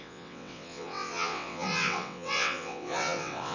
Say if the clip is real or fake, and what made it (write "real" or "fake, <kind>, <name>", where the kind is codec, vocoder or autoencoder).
fake, vocoder, WaveNeXt